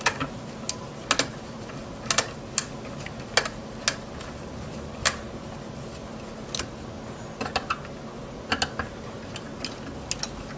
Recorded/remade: recorded